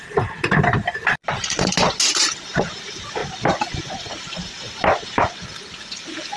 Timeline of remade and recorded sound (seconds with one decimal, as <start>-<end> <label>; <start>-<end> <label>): 0.0-6.4 recorded